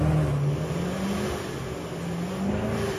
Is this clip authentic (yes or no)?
yes